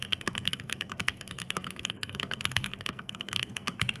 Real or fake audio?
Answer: fake